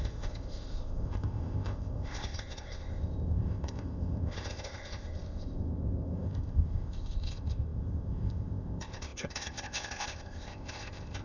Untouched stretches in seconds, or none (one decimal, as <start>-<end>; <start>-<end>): none